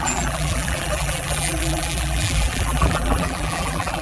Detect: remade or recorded remade